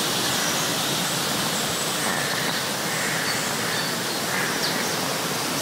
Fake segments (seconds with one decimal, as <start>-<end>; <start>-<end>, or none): 0.7-1.7